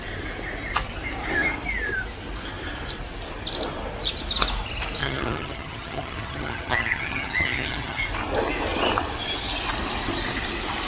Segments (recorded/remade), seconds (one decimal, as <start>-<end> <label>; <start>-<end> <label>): 0.0-5.0 recorded; 5.0-8.0 remade; 8.0-10.9 recorded

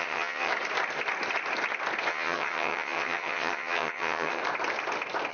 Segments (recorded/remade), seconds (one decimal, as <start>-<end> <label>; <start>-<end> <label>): 0.0-0.5 remade; 0.5-2.1 recorded; 2.1-4.4 remade; 4.4-5.3 recorded

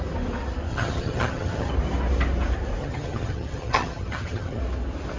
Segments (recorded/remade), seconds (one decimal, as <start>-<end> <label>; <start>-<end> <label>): 0.0-0.7 recorded; 0.7-1.7 remade; 1.7-2.8 recorded; 2.8-4.6 remade; 4.6-5.2 recorded

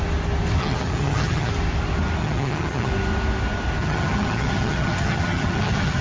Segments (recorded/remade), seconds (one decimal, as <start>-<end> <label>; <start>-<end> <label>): 0.0-0.6 recorded; 0.6-1.5 remade; 1.5-2.2 recorded; 2.2-2.9 remade; 2.9-3.8 recorded; 3.8-6.0 remade

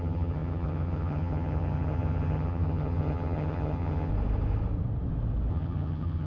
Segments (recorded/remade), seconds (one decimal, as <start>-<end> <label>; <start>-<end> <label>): 0.0-4.1 remade; 4.1-5.5 recorded; 5.5-6.3 remade